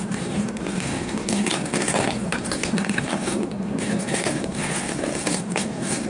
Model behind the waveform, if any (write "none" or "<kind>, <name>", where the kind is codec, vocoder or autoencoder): codec, SNAC